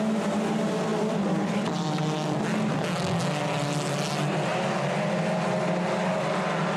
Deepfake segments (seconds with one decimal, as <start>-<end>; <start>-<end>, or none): 0.9-2.0